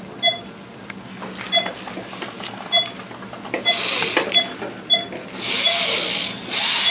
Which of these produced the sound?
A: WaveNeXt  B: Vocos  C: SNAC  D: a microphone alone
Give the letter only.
D